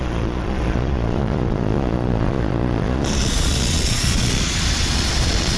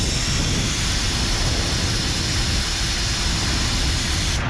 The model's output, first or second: first